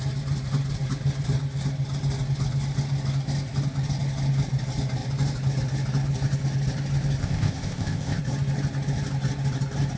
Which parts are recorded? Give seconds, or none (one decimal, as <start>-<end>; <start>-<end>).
0.0-7.2; 8.2-10.0